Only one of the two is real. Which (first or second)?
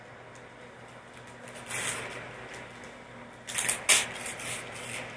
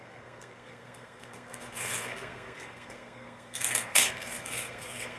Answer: first